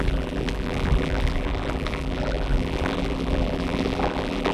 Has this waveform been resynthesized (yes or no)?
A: yes